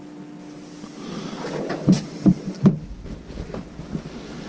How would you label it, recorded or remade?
recorded